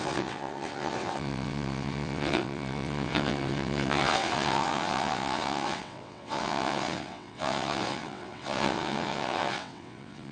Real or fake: fake